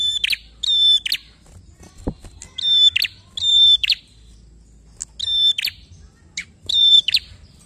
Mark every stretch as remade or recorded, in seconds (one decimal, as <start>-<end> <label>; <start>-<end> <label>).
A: 0.0-3.5 recorded; 3.5-4.0 remade; 4.0-6.4 recorded; 6.4-7.3 remade; 7.3-7.7 recorded